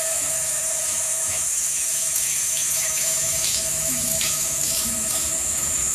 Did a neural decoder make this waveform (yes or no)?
yes